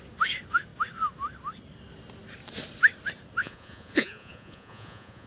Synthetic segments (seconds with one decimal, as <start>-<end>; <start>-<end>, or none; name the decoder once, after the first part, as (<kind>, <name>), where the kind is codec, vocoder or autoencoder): 3.4-5.3 (vocoder, Vocos)